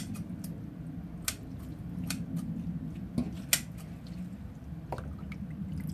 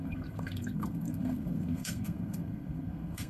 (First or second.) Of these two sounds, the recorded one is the first